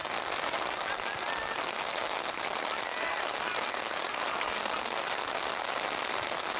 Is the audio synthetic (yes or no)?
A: no